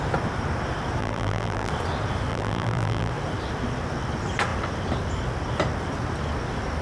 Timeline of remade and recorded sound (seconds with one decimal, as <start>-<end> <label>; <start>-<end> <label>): 0.0-1.0 recorded; 1.0-1.7 remade; 1.7-2.3 recorded; 2.3-3.1 remade; 3.1-6.8 recorded